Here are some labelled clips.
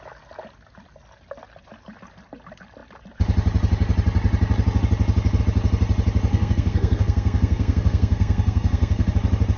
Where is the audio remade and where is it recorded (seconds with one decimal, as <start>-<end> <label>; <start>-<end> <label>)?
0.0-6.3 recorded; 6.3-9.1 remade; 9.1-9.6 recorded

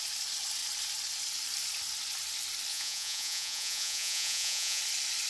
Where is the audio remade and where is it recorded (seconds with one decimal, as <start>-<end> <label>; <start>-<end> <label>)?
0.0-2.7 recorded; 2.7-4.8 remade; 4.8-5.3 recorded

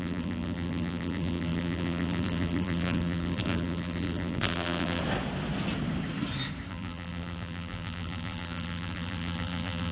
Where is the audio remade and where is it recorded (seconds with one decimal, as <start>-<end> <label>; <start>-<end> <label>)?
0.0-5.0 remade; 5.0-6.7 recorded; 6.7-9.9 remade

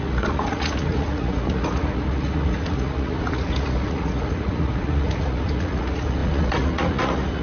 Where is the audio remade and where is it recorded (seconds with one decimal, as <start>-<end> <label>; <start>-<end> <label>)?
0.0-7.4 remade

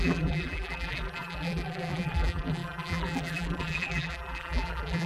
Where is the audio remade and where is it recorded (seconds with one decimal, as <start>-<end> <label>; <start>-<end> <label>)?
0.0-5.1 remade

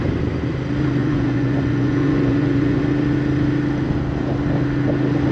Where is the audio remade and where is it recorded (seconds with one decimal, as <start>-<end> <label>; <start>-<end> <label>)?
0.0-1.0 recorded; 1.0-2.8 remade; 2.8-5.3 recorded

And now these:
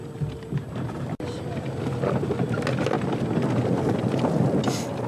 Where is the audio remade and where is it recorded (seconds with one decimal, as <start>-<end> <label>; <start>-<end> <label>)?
0.0-5.1 recorded